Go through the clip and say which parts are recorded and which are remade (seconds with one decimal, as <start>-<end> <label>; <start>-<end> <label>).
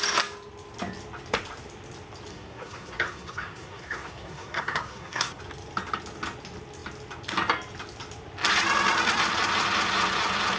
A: 0.0-2.3 recorded; 2.3-5.4 remade; 5.4-10.6 recorded